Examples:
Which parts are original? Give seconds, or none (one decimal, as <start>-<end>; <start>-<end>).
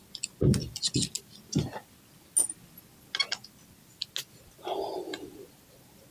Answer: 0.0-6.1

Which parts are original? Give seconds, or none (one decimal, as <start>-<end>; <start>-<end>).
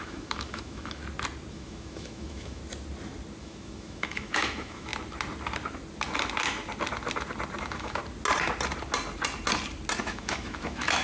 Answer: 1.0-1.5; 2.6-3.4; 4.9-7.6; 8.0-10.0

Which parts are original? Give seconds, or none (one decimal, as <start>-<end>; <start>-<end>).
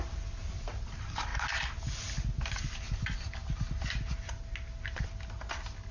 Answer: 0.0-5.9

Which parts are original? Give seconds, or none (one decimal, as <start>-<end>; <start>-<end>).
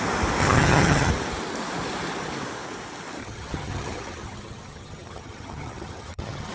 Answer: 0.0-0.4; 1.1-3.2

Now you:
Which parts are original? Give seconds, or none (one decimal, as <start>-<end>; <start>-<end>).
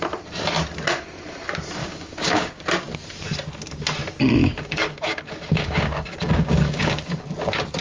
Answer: 0.0-1.8; 2.6-4.4; 7.2-7.8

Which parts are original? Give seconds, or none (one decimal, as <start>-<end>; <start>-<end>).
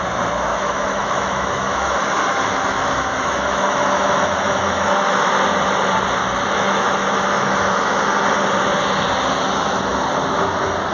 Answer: 0.0-0.5; 5.3-6.2; 8.0-10.9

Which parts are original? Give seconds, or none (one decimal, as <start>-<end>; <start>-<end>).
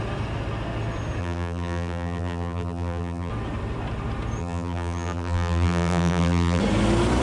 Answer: 0.0-1.2; 3.3-4.4; 6.6-7.2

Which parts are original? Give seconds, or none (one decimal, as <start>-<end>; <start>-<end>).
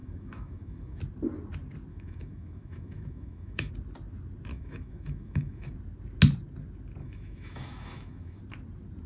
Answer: 1.0-1.9; 3.7-4.5; 5.7-7.0; 8.4-9.1